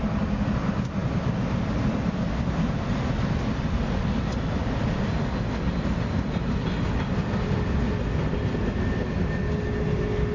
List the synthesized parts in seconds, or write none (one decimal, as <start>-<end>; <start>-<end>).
none